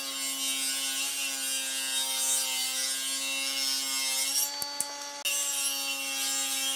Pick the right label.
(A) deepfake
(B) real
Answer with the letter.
B